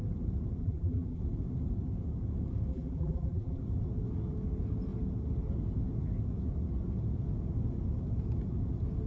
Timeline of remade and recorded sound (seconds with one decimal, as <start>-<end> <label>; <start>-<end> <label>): 0.0-0.6 recorded; 0.6-1.2 remade; 1.2-2.7 recorded; 2.7-3.6 remade; 3.6-9.1 recorded